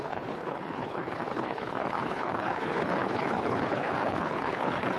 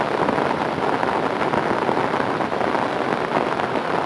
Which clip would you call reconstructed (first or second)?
first